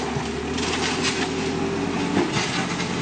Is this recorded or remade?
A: recorded